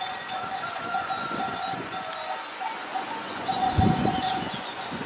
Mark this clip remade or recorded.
remade